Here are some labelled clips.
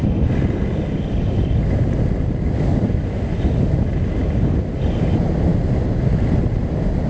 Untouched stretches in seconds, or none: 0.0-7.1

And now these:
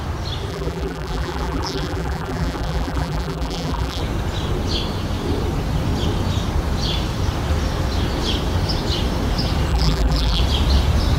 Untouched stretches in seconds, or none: 0.0-0.5; 4.0-9.7; 10.4-11.2

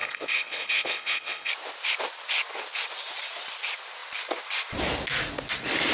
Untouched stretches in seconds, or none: 1.5-5.9

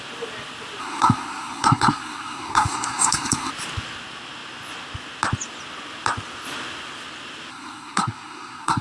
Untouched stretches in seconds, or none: 0.0-0.8; 3.5-7.5

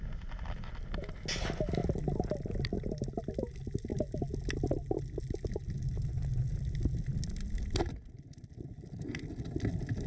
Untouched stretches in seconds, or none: 0.0-10.1